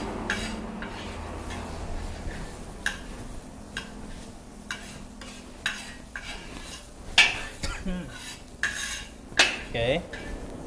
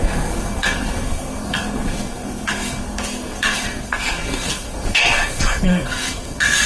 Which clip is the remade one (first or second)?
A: second